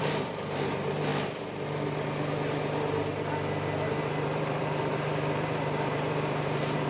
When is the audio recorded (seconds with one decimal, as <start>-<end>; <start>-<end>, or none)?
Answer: 1.1-3.9